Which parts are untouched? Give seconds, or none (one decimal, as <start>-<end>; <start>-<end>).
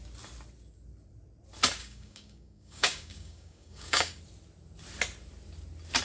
0.0-1.8; 4.2-6.0